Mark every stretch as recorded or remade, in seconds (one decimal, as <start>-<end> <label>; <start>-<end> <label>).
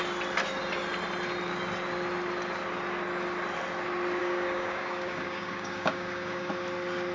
0.0-4.2 recorded; 4.2-6.5 remade; 6.5-7.1 recorded